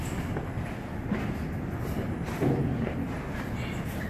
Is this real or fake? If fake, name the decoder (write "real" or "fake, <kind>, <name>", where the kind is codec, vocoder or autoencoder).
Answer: real